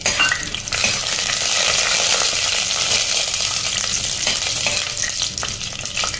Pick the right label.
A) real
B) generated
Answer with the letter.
A